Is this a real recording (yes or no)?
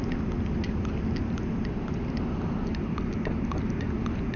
yes